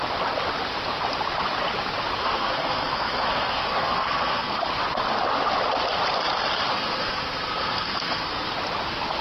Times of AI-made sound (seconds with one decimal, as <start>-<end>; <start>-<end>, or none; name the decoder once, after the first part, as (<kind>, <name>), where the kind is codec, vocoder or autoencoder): 2.2-4.7 (codec, SNAC); 6.7-8.5